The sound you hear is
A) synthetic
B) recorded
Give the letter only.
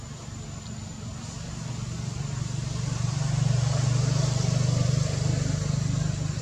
B